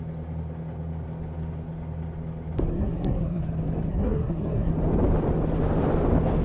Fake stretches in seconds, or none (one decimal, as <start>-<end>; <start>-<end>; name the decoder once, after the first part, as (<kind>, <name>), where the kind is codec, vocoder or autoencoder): 2.7-3.4 (codec, SNAC); 3.9-4.7